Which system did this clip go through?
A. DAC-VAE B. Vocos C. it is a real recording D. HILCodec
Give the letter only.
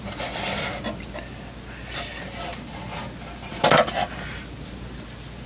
C